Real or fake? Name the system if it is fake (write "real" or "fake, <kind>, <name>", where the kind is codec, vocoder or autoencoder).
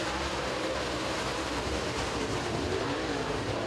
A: fake, vocoder, BigVGAN v2